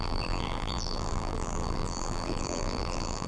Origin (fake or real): fake